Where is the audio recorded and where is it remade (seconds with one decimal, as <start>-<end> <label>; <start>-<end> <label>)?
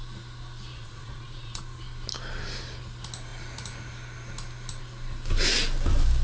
0.0-0.7 recorded; 0.7-1.6 remade; 1.6-6.2 recorded